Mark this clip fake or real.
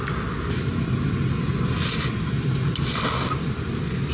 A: real